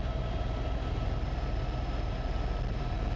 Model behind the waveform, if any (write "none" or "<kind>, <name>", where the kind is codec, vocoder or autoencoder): none